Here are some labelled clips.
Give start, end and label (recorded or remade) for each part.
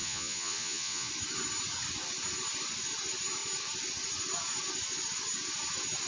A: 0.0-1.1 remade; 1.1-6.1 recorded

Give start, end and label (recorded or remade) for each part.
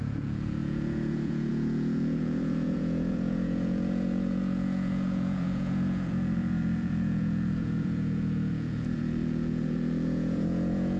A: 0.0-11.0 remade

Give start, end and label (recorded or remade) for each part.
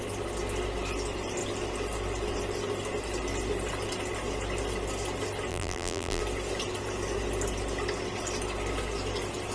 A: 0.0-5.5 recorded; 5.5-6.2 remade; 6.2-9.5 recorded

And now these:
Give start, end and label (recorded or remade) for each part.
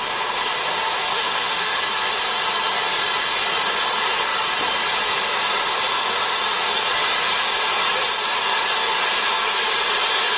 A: 0.0-1.0 recorded; 1.0-1.8 remade; 1.8-10.4 recorded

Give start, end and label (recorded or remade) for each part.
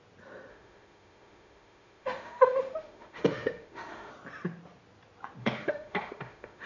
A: 0.0-0.5 recorded; 0.5-4.1 remade; 4.1-5.4 recorded; 5.4-6.7 remade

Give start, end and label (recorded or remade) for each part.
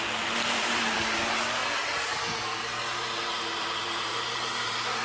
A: 0.0-1.6 remade; 1.6-2.4 recorded; 2.4-5.0 remade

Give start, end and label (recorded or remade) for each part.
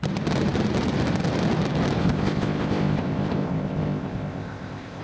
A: 0.0-2.0 recorded; 2.0-5.0 remade